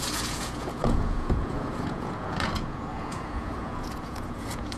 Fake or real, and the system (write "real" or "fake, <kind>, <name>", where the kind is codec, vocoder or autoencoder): fake, vocoder, Vocos